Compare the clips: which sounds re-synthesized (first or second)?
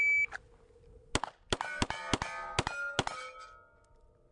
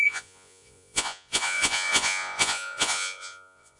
second